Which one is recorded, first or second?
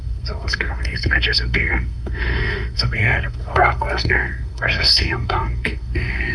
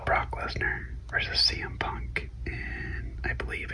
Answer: second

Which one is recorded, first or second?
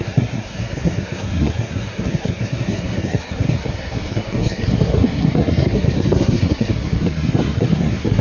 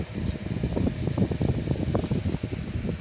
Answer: second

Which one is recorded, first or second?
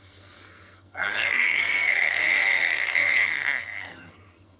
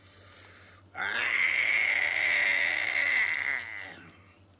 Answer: second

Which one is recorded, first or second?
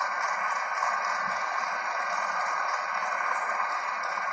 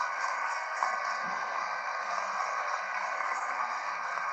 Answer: first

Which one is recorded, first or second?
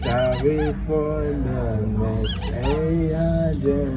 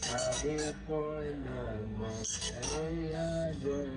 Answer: first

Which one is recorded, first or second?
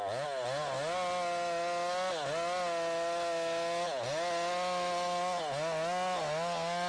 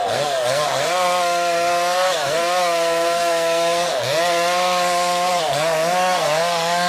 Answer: first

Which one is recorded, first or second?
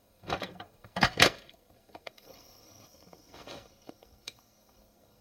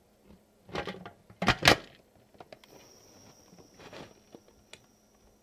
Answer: second